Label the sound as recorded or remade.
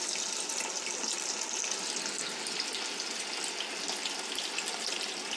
recorded